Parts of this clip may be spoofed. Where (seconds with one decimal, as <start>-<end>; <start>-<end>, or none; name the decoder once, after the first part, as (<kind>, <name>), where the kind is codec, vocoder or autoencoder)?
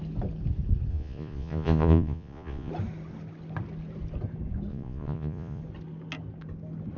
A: 0.9-2.7 (vocoder, Vocos); 4.7-5.6